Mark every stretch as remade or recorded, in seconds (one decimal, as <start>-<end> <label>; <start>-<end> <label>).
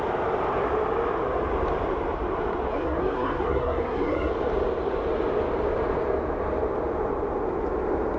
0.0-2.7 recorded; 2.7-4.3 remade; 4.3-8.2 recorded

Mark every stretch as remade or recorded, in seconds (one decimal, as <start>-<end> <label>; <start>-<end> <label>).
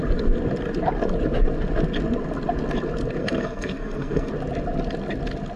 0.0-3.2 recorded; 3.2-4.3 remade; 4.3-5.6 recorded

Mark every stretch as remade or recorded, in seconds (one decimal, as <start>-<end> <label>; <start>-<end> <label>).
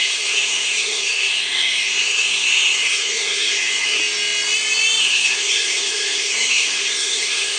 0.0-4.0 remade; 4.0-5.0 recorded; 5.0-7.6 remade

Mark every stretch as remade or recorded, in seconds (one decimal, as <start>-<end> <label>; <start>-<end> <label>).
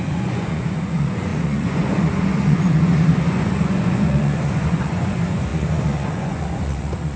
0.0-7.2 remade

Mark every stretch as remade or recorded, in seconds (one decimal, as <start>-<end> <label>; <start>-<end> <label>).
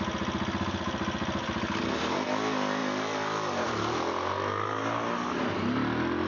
0.0-6.3 recorded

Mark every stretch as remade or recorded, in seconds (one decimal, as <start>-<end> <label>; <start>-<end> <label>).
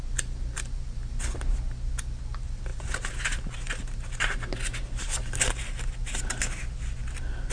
0.0-7.5 recorded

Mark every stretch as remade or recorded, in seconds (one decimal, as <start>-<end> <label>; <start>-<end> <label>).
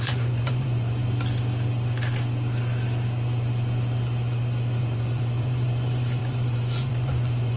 0.0-1.0 remade; 1.0-4.8 recorded; 4.8-7.6 remade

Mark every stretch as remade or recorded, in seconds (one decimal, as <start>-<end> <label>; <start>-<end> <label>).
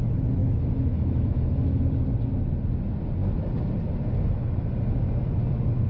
0.0-0.4 recorded; 0.4-1.8 remade; 1.8-5.9 recorded